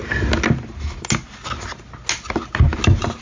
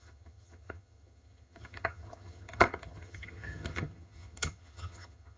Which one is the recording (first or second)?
first